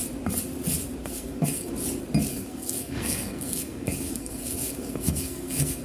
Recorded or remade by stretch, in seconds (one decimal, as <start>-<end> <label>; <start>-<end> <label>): 0.0-1.0 recorded; 1.0-1.7 remade; 1.7-2.3 recorded; 2.3-5.8 remade

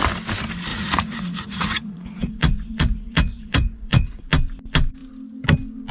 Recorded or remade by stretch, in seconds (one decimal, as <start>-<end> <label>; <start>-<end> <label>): 0.0-0.7 recorded; 0.7-4.2 remade; 4.2-5.9 recorded

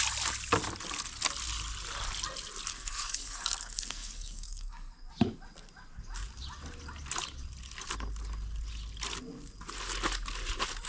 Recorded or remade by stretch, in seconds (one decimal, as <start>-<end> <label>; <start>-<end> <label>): 0.0-2.7 recorded; 2.7-5.1 remade; 5.1-10.9 recorded

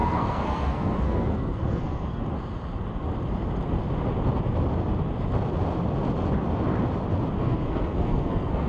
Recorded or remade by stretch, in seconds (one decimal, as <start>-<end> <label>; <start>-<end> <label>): 0.0-2.2 remade; 2.2-7.4 recorded; 7.4-8.7 remade

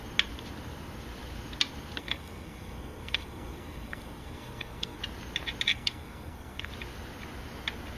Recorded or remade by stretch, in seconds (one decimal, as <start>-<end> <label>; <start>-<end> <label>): 0.0-2.0 recorded; 2.0-5.0 remade; 5.0-5.7 recorded; 5.7-6.7 remade; 6.7-8.0 recorded